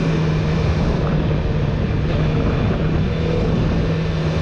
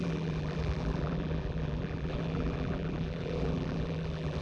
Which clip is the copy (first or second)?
second